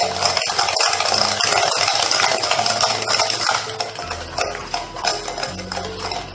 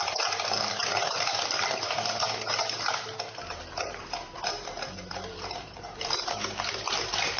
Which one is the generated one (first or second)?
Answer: second